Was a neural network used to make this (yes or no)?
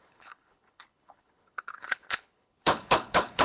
yes